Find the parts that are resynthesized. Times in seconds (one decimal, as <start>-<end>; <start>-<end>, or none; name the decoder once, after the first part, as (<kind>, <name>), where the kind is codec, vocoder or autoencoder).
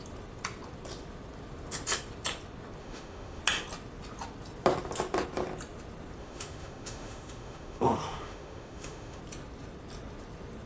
2.8-3.4 (autoencoder, DAC-VAE); 6.2-9.2